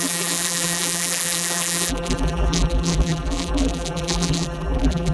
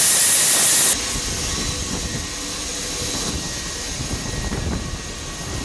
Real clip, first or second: second